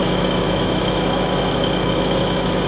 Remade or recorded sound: remade